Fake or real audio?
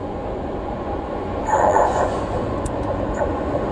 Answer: fake